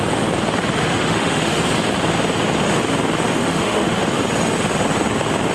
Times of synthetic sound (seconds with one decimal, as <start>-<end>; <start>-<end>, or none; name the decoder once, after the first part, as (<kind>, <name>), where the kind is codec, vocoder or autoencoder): 0.8-1.6 (autoencoder, DAC-VAE); 3.4-4.2